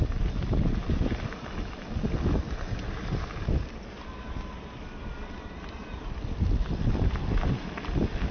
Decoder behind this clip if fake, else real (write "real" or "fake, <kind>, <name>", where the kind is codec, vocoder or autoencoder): real